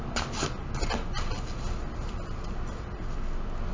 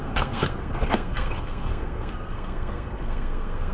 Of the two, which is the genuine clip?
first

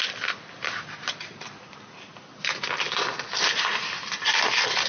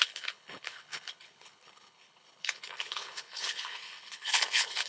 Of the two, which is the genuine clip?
first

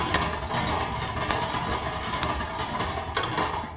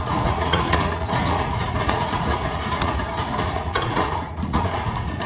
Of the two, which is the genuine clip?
first